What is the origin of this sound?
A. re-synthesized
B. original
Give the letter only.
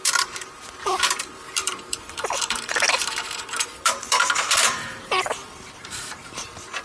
A